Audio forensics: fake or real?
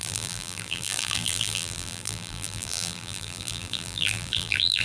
fake